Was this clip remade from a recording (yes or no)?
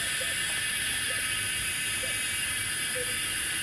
no